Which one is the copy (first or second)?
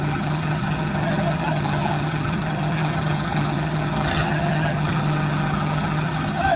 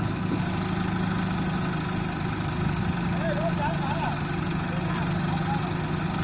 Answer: first